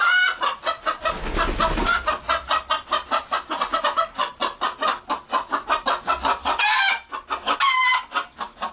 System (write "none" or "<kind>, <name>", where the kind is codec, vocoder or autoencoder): none